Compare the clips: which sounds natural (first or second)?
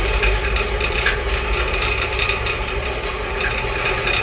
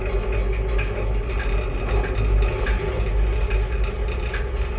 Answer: second